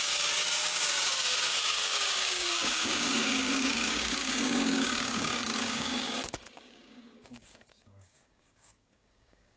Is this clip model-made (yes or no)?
yes